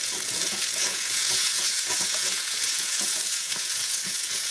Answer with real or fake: fake